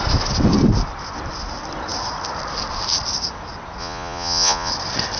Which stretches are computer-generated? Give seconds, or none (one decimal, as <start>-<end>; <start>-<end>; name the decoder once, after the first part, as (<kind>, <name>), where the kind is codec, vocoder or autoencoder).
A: 3.8-4.7 (vocoder, Vocos)